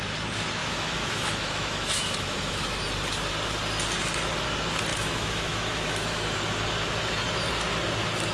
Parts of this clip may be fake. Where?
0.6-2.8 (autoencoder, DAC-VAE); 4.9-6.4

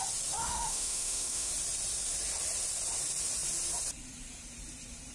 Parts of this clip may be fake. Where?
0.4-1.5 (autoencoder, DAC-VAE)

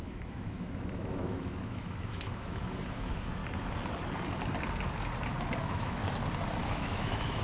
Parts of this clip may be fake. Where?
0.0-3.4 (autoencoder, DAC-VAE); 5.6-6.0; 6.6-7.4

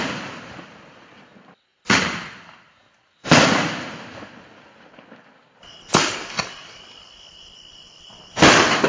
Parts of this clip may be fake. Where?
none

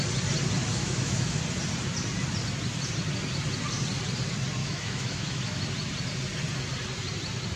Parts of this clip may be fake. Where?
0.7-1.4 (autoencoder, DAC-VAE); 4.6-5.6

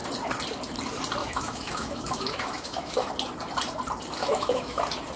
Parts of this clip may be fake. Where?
1.2-3.1 (autoencoder, DAC-VAE); 4.2-4.8